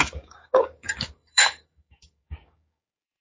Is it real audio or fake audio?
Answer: fake